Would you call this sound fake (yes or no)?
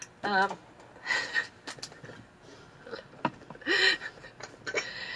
no